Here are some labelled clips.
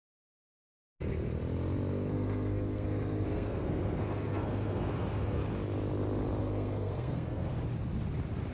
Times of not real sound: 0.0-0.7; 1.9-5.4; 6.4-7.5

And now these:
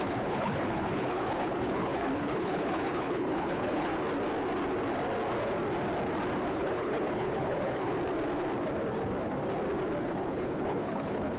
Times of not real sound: 0.0-3.9; 6.5-7.9; 10.0-11.4

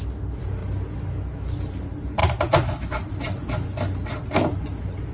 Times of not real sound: none